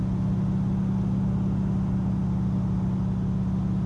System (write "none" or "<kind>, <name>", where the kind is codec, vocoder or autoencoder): none